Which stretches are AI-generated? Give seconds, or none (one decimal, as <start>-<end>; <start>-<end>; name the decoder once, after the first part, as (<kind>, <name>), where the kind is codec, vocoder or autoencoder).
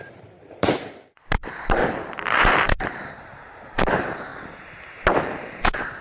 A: 0.0-1.8 (vocoder, BigVGAN v2); 2.3-4.3; 5.5-6.0